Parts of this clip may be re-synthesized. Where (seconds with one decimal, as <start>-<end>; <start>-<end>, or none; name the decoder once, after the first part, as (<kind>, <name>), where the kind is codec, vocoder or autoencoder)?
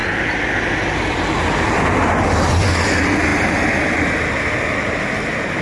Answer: 0.0-2.5 (vocoder, BigVGAN v2); 3.3-5.0